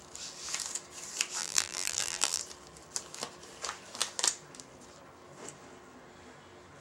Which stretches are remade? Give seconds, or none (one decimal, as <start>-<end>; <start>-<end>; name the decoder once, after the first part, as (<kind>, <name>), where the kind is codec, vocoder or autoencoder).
1.4-2.4 (vocoder, BigVGAN v2)